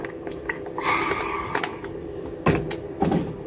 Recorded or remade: recorded